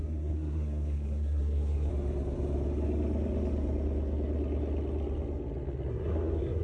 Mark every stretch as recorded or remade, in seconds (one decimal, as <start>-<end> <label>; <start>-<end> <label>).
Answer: 0.0-1.9 remade; 1.9-5.9 recorded; 5.9-6.6 remade